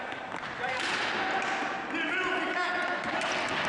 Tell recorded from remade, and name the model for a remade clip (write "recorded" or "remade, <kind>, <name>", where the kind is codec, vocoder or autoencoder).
recorded